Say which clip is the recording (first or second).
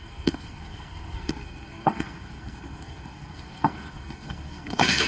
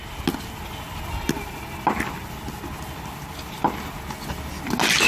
second